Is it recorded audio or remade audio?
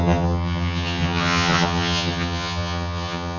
remade